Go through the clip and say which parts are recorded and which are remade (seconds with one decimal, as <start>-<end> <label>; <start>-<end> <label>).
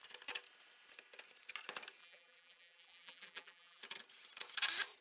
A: 0.0-2.0 recorded; 2.0-3.8 remade; 3.8-5.0 recorded